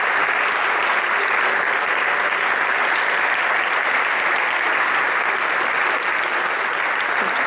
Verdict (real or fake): real